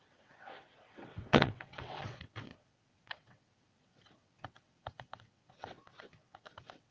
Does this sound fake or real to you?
fake